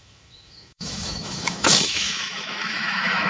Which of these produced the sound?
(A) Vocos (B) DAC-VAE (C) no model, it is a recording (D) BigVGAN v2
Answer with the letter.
B